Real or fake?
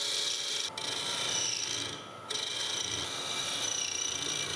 real